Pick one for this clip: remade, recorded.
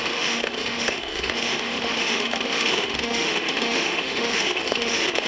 remade